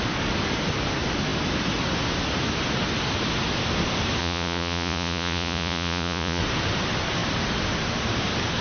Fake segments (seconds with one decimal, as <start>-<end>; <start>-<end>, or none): 4.2-6.4